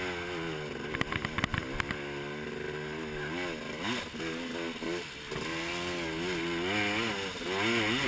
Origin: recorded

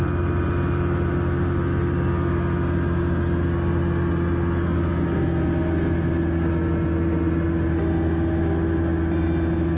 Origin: recorded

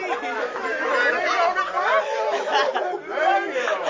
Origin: recorded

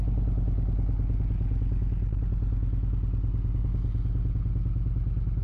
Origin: recorded